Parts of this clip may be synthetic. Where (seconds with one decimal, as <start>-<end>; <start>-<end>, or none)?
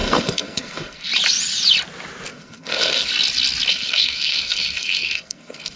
0.0-1.1; 2.3-3.1; 3.7-5.8